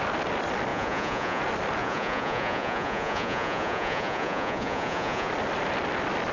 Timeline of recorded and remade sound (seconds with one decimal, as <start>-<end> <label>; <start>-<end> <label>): 0.0-0.7 recorded; 0.7-1.4 remade; 1.4-1.8 recorded; 1.8-5.3 remade; 5.3-6.3 recorded